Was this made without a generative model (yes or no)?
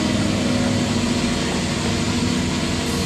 yes